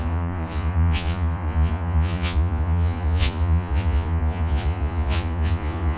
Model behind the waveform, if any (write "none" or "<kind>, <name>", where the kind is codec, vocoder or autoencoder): vocoder, Vocos